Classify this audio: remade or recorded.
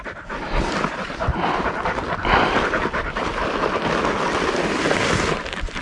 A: recorded